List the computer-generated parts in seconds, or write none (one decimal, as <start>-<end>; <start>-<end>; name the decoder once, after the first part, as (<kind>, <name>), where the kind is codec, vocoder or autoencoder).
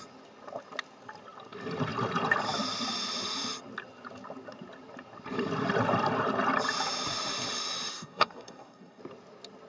7.9-9.0 (codec, SNAC)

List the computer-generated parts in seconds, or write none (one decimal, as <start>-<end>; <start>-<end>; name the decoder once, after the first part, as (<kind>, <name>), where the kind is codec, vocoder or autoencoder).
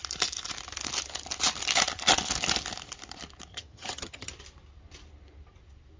3.5-4.3 (vocoder, HiFi-GAN)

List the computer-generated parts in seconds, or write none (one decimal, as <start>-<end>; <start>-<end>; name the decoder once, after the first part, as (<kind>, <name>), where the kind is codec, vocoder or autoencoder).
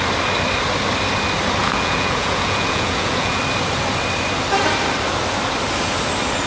1.6-3.4 (vocoder, Vocos)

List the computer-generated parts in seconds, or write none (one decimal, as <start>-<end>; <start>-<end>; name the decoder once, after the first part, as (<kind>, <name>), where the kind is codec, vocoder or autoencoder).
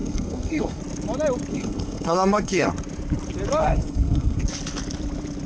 0.0-0.8 (codec, SNAC); 1.5-2.7; 3.6-4.4